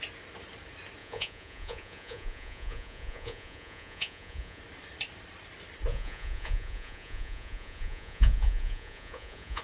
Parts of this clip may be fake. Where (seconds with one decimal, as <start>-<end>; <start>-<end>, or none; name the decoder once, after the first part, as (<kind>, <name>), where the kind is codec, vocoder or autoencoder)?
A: 1.0-4.6 (vocoder, Vocos); 5.9-9.6